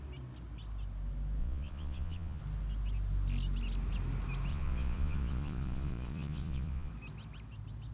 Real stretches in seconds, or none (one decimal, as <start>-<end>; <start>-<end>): 0.0-1.4; 2.4-4.5; 6.9-7.9